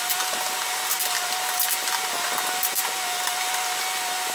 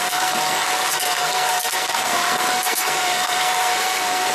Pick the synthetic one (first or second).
second